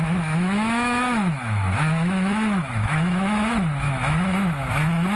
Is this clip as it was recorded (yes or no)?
no